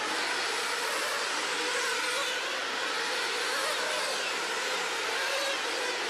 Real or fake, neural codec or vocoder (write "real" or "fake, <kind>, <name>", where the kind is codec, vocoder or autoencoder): real